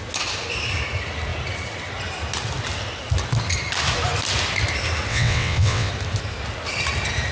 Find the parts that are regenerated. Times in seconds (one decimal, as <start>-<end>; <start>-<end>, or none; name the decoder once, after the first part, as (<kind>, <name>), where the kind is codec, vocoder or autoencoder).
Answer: 5.1-5.9 (vocoder, WaveNeXt)